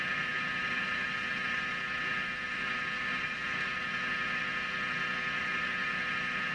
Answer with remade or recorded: recorded